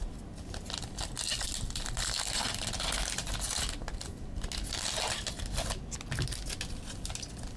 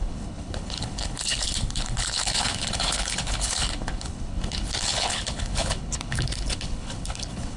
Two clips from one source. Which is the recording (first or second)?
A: first